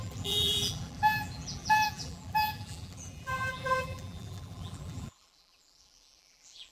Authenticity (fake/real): fake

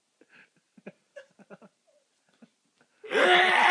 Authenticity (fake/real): real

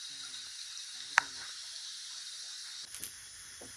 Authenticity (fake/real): real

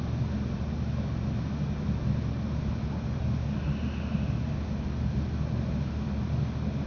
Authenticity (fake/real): real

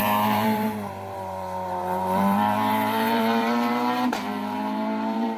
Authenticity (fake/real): fake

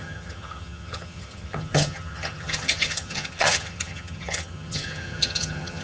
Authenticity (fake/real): fake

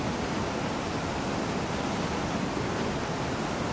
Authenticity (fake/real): real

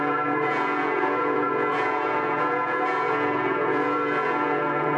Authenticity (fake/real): fake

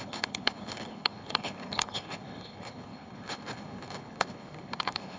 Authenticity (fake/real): fake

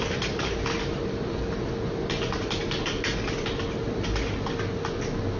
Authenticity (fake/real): real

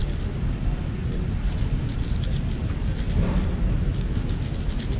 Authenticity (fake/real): real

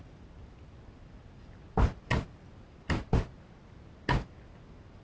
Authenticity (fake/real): real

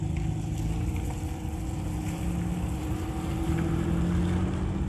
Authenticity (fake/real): real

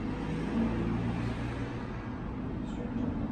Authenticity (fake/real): real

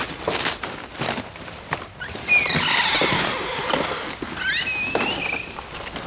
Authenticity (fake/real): real